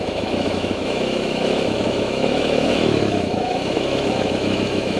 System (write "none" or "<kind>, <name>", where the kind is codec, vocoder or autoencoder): autoencoder, DAC-VAE